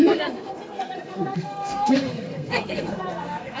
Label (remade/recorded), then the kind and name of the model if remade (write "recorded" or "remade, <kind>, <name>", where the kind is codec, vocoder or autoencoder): remade, codec, SNAC